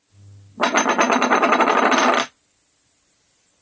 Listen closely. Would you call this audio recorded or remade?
recorded